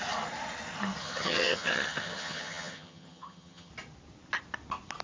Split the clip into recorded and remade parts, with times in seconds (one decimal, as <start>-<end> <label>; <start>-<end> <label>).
0.0-1.0 recorded; 1.0-3.7 remade; 3.7-5.0 recorded